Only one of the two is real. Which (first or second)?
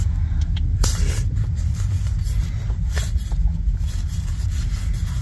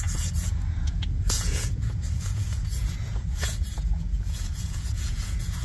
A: first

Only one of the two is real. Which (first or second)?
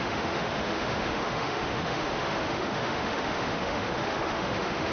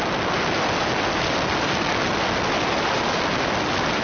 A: second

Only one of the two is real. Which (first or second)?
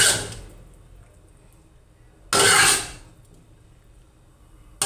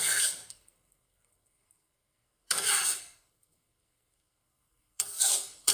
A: first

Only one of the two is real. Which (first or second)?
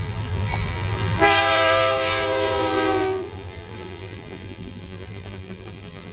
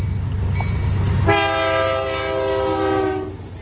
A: second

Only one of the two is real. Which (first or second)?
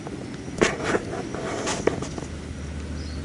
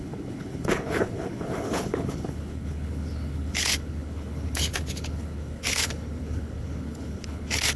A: first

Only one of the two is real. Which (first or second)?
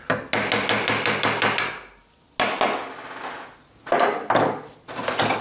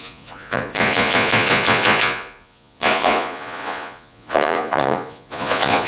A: first